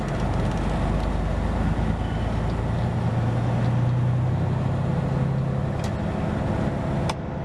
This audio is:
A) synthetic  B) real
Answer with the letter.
B